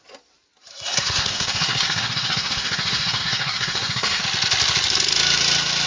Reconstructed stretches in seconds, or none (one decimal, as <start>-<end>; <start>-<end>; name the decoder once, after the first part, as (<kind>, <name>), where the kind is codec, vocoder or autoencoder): 0.7-4.2 (codec, SNAC)